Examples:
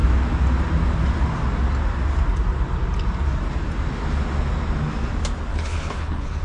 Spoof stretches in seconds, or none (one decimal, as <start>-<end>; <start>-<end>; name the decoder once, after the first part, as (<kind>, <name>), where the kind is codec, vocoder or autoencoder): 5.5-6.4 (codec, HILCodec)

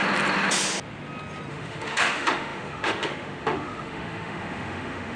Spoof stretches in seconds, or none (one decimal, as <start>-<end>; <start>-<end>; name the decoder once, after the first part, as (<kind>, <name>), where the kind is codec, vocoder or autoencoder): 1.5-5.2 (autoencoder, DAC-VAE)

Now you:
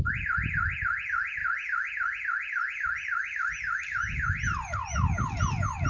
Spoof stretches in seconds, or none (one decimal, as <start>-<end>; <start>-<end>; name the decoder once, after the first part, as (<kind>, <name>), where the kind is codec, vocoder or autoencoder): none

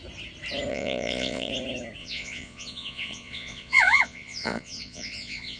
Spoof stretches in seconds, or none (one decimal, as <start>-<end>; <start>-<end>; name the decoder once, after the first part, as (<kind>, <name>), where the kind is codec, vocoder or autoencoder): 0.7-1.5 (vocoder, Vocos); 2.0-5.6

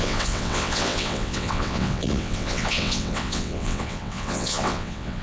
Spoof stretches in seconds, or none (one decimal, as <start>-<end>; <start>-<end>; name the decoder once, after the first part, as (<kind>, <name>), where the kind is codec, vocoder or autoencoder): 0.0-5.2 (vocoder, WaveNeXt)